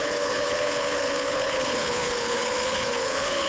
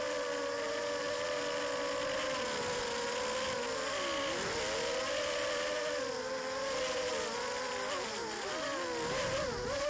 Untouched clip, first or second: second